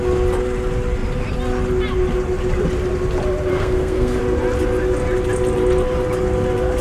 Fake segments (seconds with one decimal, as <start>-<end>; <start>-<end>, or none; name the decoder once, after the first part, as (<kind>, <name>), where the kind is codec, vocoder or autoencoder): 3.5-4.2 (codec, SNAC)